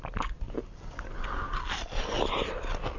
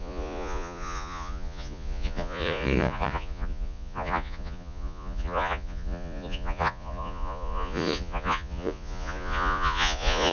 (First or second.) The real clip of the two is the first